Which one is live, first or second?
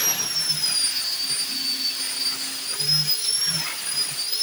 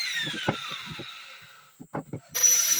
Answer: first